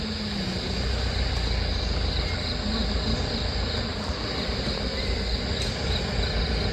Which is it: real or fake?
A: real